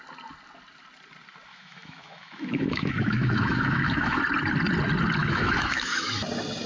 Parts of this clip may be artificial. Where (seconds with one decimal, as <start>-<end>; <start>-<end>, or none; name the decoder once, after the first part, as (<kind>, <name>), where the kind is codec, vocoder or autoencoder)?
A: 1.5-4.2 (autoencoder, DAC-VAE); 5.2-6.2